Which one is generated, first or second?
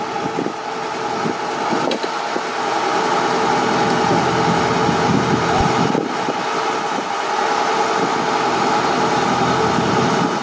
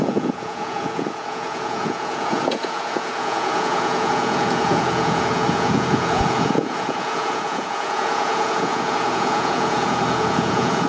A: second